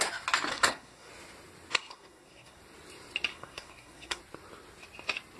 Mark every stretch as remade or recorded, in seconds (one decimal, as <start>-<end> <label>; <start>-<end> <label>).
0.0-0.5 recorded; 0.5-1.1 remade; 1.1-1.7 recorded; 1.7-2.6 remade; 2.6-3.3 recorded; 3.3-4.2 remade; 4.2-5.4 recorded